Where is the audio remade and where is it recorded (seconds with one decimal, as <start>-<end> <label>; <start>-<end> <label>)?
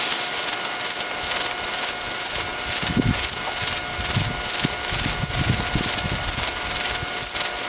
0.0-7.7 recorded